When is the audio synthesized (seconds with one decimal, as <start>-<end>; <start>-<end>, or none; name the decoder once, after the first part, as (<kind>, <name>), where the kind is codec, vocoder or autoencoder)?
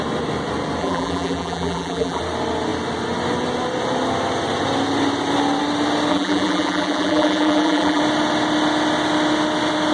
0.8-2.2 (vocoder, BigVGAN v2); 6.1-8.0